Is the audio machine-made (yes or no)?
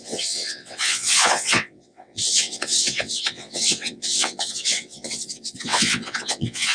yes